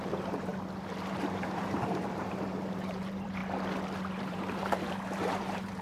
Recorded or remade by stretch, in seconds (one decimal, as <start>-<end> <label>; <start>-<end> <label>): 0.0-0.5 remade; 0.5-1.1 recorded; 1.1-3.4 remade; 3.4-4.0 recorded; 4.0-5.8 remade

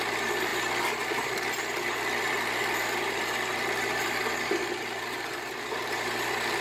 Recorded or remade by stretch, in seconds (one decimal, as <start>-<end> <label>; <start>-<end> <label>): 0.0-0.5 remade; 0.5-2.2 recorded; 2.2-6.6 remade